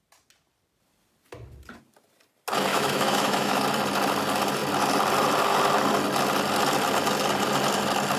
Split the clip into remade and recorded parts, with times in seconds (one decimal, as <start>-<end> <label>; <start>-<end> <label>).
0.0-2.7 recorded; 2.7-3.6 remade; 3.6-8.2 recorded